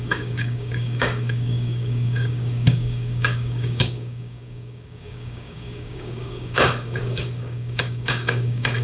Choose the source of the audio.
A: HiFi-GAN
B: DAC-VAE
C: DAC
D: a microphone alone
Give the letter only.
C